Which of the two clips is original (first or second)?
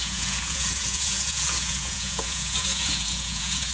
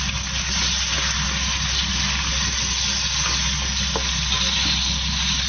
second